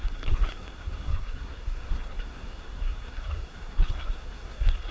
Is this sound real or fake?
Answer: fake